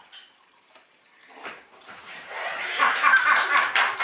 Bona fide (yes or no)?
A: no